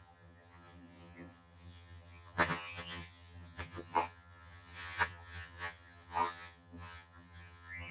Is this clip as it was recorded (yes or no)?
no